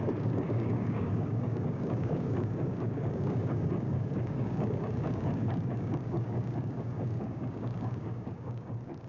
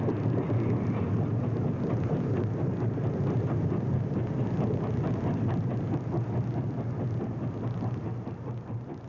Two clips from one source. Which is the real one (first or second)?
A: second